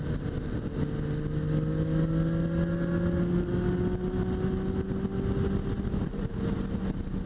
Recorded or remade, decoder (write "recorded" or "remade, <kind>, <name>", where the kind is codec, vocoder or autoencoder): recorded